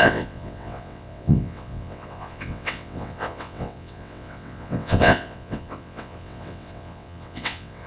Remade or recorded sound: remade